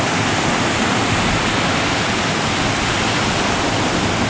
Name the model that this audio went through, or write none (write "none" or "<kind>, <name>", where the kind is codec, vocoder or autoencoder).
none